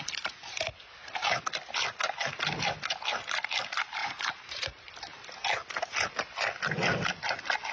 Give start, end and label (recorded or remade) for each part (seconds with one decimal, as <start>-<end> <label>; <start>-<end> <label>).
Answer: 0.0-4.0 recorded; 4.0-4.9 remade; 4.9-7.7 recorded

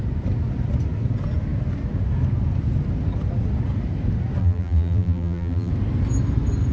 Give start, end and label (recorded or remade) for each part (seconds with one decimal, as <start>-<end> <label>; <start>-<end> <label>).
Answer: 0.0-4.4 recorded; 4.4-5.7 remade; 5.7-6.7 recorded

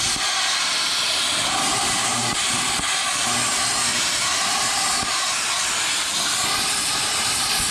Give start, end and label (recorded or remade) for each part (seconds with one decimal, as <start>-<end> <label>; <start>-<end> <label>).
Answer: 0.0-2.2 recorded; 2.2-2.8 remade; 2.8-3.9 recorded; 3.9-4.6 remade; 4.6-7.7 recorded

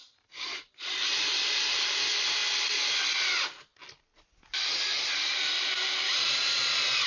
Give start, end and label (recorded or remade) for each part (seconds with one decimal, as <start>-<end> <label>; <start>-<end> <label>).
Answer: 0.0-2.0 remade; 2.0-7.1 recorded

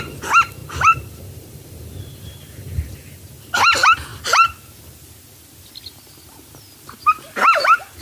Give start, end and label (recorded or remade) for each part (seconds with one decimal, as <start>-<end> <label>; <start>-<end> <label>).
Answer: 0.0-0.6 recorded; 0.6-3.2 remade; 3.2-8.0 recorded

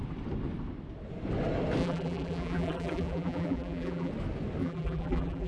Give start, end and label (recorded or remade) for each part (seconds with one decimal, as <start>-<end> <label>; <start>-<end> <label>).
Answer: 0.0-1.8 recorded; 1.8-4.1 remade; 4.1-4.6 recorded; 4.6-5.5 remade